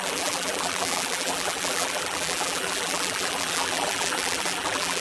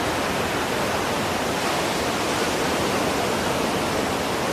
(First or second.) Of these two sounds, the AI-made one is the first